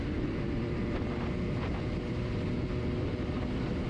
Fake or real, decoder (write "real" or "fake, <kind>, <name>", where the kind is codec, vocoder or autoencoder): real